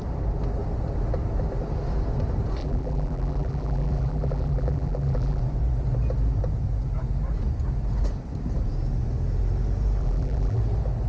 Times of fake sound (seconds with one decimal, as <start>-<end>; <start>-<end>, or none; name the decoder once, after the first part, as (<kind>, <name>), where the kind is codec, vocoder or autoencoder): 2.6-5.4 (vocoder, BigVGAN v2); 10.0-10.6